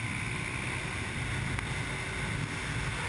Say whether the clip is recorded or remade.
recorded